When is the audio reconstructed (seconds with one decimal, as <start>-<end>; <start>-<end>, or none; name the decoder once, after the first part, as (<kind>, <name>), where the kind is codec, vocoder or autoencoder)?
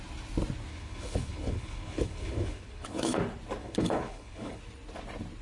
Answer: 0.7-3.2 (codec, HILCodec); 3.6-4.6